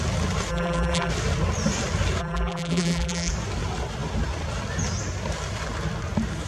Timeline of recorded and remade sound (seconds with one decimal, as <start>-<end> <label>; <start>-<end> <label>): 0.0-0.5 recorded; 0.5-1.1 remade; 1.1-2.2 recorded; 2.2-3.3 remade; 3.3-6.5 recorded